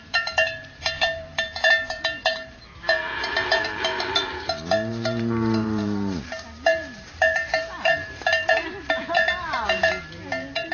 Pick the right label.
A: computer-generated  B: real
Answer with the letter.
A